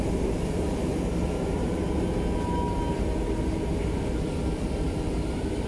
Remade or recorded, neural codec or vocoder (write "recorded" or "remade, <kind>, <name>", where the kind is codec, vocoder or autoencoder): recorded